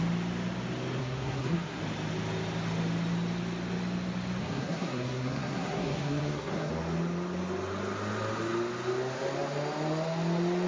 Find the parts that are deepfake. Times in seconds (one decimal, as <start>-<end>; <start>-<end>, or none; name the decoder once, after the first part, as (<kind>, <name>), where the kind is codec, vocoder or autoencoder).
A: 1.0-1.8 (codec, SNAC); 4.4-6.7